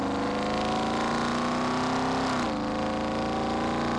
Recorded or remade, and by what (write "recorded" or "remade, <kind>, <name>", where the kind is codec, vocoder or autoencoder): recorded